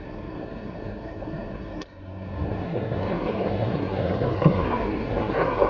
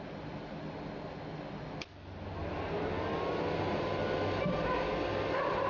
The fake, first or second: first